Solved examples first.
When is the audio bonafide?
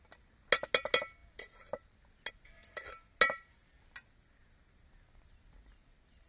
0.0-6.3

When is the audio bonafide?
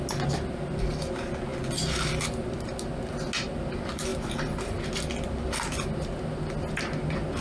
0.0-7.4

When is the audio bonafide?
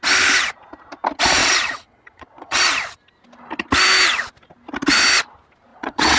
0.0-1.4; 2.6-5.7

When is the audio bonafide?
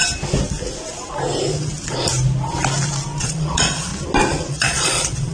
0.0-3.2; 3.9-4.5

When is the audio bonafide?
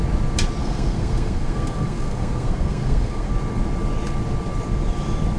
0.0-0.6; 3.3-5.4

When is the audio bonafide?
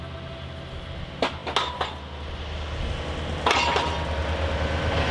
0.0-5.1